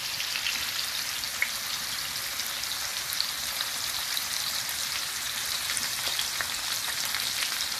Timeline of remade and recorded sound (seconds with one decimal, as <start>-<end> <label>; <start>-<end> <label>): 0.0-2.9 recorded; 2.9-6.3 remade; 6.3-7.8 recorded